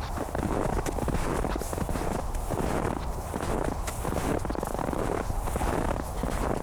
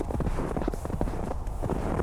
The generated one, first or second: second